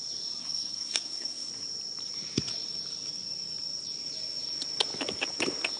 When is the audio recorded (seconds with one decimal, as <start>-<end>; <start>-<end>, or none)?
0.0-0.4; 1.5-5.8